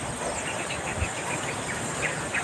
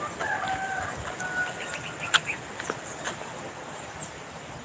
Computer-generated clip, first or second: first